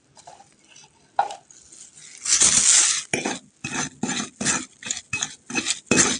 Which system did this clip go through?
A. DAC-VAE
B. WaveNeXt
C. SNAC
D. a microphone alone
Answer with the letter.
D